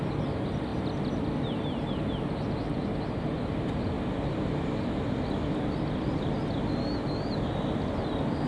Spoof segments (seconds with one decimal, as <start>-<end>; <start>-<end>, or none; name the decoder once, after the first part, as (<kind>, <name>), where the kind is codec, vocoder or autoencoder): none